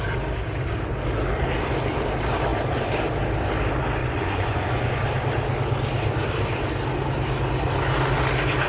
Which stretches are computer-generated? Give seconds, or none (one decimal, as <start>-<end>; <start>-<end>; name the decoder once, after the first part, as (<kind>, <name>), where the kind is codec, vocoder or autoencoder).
4.0-4.9 (vocoder, Vocos)